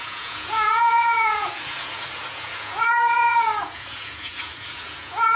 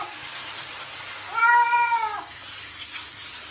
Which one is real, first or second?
second